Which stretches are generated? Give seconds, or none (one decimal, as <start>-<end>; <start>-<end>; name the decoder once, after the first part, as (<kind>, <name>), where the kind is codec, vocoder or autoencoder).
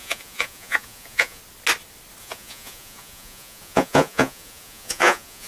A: 0.0-1.4 (vocoder, Vocos); 2.2-5.5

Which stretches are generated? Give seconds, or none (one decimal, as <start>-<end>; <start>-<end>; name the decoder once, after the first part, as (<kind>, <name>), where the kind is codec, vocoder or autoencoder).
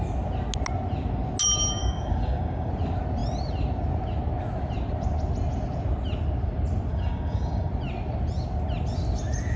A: 1.8-2.7 (codec, DAC); 6.9-7.7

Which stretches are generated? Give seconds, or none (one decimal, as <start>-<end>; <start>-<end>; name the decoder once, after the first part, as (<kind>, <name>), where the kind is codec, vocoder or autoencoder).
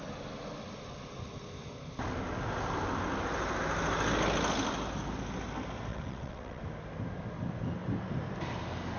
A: 5.9-6.6 (vocoder, WaveNeXt)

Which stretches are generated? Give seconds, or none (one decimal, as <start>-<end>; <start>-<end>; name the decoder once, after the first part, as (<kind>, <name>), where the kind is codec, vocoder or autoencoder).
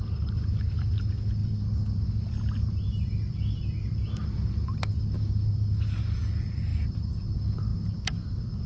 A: none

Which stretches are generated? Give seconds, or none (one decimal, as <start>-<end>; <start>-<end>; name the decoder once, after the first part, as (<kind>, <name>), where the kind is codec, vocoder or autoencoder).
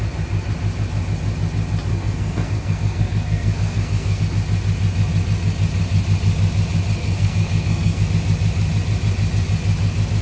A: 1.9-4.2 (codec, SNAC); 7.0-8.1